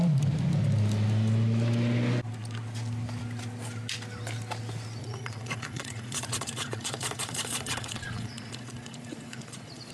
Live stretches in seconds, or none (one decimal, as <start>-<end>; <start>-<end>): 0.0-5.0

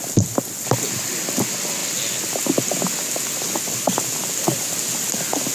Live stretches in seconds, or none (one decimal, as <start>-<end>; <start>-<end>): 0.0-5.5

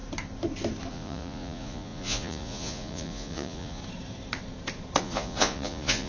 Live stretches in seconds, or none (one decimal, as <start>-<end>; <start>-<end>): 0.0-0.9; 3.8-5.0

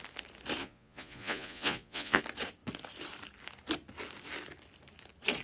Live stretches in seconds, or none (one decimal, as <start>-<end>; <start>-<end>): 0.0-0.6; 2.2-5.4

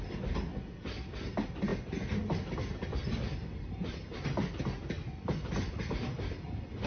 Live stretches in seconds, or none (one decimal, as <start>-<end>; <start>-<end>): 0.0-6.9